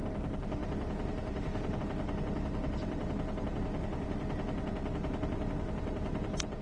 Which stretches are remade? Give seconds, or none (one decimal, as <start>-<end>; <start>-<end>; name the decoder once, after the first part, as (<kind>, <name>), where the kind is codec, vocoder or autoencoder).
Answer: none